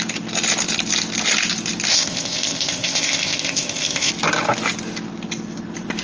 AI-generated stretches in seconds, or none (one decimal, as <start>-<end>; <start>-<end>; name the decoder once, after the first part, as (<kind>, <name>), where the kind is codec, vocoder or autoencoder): 1.9-4.1 (codec, ZipCodec)